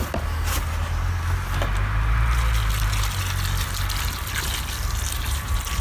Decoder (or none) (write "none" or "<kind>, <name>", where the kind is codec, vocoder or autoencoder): none